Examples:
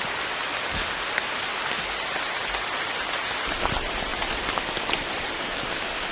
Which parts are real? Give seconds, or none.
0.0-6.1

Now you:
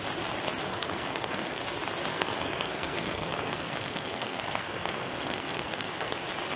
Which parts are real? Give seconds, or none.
0.0-0.7; 1.6-2.1; 6.1-6.6

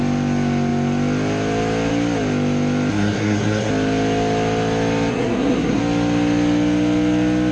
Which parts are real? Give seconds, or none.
0.0-2.9; 3.7-5.1; 5.8-7.5

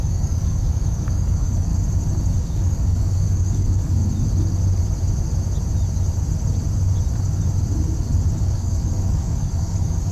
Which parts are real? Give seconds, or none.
1.7-2.4; 4.0-8.4

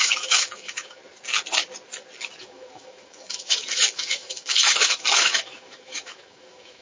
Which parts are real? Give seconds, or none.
1.0-2.4

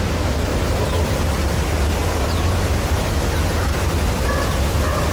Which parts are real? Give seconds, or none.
0.0-5.1